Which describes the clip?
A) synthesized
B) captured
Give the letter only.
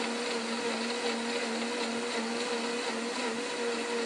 B